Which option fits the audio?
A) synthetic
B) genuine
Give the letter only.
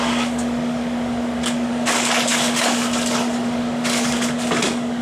A